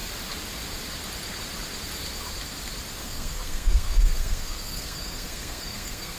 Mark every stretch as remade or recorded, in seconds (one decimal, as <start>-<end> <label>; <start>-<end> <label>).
0.0-3.0 recorded; 3.0-6.2 remade